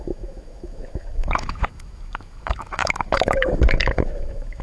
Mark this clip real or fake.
fake